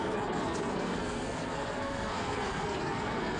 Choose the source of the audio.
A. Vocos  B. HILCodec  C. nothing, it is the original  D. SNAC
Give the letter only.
D